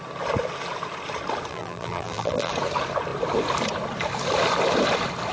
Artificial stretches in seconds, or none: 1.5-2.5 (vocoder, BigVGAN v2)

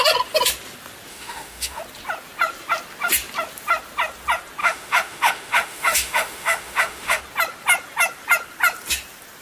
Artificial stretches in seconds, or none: 1.1-1.8 (autoencoder, DAC-VAE); 4.6-7.2

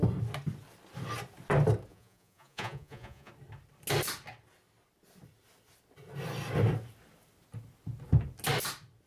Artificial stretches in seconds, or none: 1.9-3.3 (vocoder, Vocos)

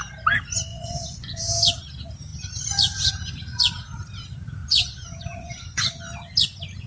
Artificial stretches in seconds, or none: 0.7-1.4 (vocoder, Vocos); 4.6-6.0

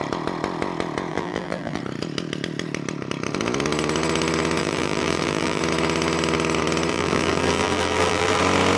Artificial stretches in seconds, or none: 1.1-1.8 (vocoder, BigVGAN v2); 4.6-5.6; 6.9-8.4

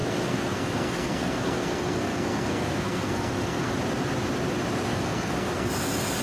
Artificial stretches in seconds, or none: 0.0-3.7 (codec, SNAC); 4.9-5.7

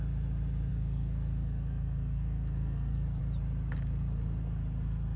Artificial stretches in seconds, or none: 0.7-3.2 (codec, SNAC)

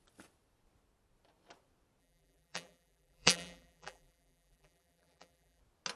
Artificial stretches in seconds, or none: 2.0-5.6 (vocoder, BigVGAN v2)